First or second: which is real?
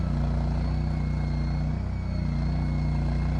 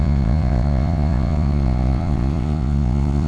first